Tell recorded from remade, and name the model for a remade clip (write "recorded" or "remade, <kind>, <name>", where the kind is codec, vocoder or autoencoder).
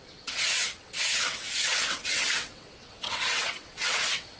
remade, vocoder, WaveNeXt